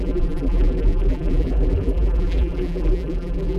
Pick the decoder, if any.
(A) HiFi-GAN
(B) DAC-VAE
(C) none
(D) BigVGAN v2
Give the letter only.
D